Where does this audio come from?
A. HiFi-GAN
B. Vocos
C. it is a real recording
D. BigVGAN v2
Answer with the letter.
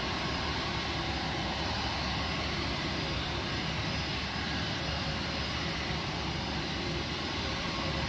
D